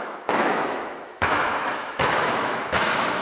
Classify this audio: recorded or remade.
remade